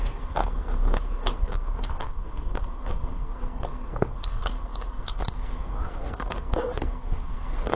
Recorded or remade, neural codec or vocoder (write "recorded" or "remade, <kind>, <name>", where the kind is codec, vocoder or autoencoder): remade, codec, SNAC